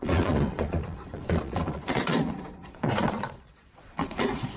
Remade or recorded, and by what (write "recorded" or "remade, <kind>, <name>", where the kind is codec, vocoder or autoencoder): remade, vocoder, Vocos